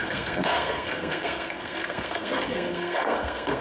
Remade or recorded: remade